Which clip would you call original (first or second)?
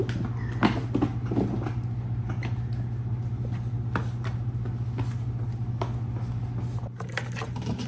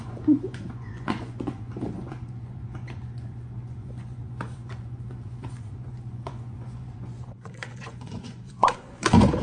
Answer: first